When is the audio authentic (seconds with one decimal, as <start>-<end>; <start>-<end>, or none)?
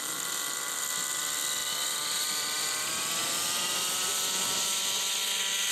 0.0-1.6; 3.2-5.7